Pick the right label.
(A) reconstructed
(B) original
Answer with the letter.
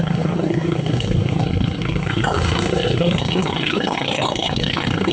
A